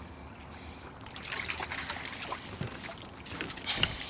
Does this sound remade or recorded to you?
recorded